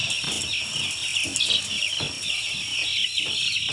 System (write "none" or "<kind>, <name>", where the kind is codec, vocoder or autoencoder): none